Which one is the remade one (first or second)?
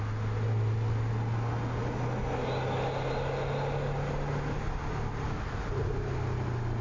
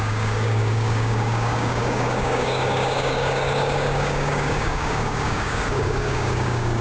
second